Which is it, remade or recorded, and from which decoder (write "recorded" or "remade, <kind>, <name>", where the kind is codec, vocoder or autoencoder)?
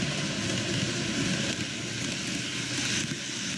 recorded